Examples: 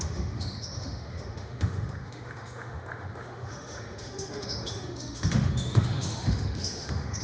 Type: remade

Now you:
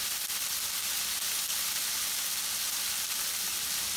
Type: recorded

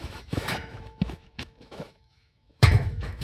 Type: remade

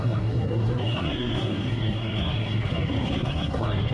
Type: remade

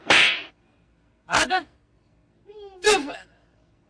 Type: remade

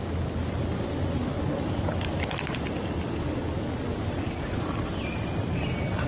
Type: recorded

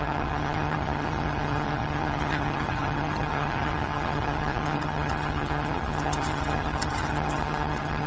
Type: remade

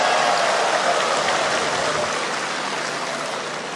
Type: recorded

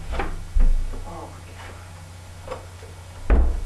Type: recorded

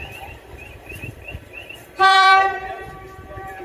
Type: remade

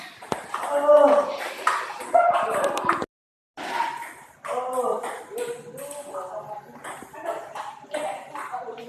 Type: recorded